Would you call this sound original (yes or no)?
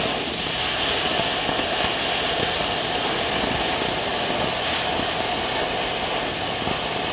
yes